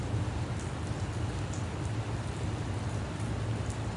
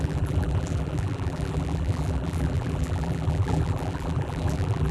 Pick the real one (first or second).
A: first